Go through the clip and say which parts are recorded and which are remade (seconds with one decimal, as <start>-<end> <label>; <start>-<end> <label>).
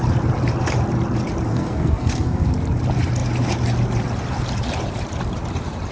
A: 0.0-1.5 recorded; 1.5-2.5 remade; 2.5-5.9 recorded